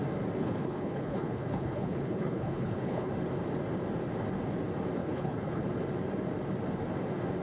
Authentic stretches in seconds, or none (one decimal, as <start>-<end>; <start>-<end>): 0.0-0.4; 3.1-5.0; 5.6-7.4

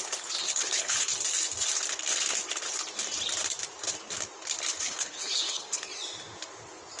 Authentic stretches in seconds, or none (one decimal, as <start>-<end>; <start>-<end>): 1.1-4.8; 5.9-7.0

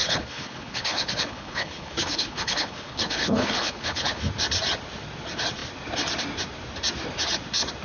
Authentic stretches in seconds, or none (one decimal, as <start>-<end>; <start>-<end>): 4.2-7.8